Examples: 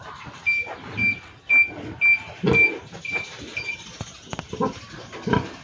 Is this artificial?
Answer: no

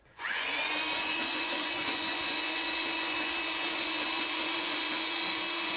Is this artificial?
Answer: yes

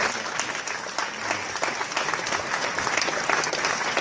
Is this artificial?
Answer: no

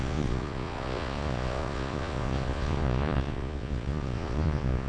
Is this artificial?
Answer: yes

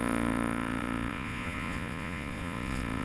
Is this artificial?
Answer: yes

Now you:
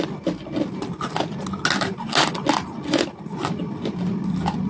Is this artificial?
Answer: no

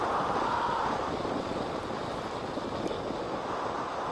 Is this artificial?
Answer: no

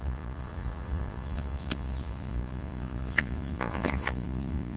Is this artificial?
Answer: yes